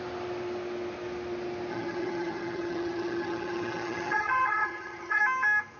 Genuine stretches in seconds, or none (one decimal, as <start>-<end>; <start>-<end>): 0.0-1.7; 5.2-5.8